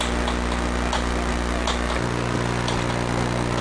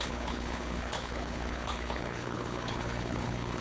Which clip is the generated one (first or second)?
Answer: second